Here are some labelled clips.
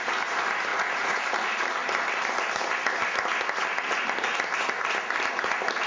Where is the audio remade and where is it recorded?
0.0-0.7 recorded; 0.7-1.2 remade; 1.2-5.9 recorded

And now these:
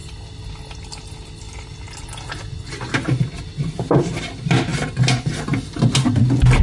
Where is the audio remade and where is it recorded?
0.0-6.6 recorded

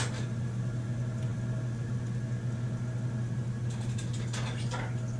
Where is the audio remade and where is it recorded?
0.0-5.2 recorded

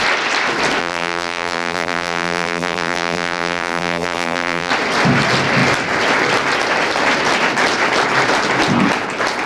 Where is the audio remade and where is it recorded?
0.0-0.8 recorded; 0.8-4.7 remade; 4.7-9.5 recorded

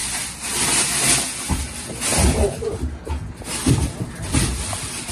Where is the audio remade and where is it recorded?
0.0-0.7 remade; 0.7-5.1 recorded

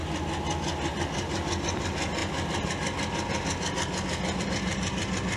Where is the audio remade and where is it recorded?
0.0-0.9 recorded; 0.9-2.2 remade; 2.2-4.4 recorded; 4.4-5.4 remade

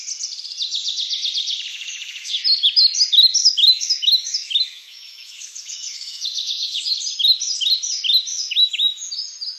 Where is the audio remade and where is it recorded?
0.0-1.7 recorded; 1.7-2.3 remade; 2.3-3.4 recorded; 3.4-6.9 remade; 6.9-8.3 recorded; 8.3-9.1 remade; 9.1-9.6 recorded